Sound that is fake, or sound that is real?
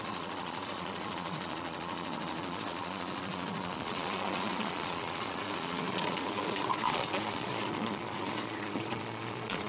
fake